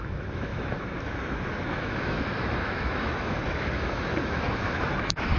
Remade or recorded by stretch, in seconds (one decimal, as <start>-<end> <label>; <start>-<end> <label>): 0.0-5.4 remade